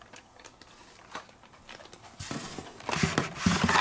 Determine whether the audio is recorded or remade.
recorded